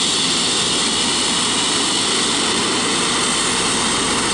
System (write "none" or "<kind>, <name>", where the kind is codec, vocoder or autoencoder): none